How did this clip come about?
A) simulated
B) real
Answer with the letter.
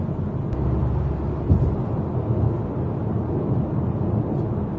B